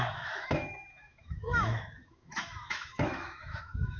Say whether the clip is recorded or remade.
remade